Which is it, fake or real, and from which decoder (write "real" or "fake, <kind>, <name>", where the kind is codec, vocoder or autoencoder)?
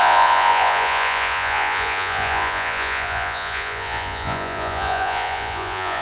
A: fake, vocoder, Vocos